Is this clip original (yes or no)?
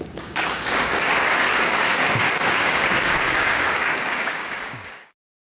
no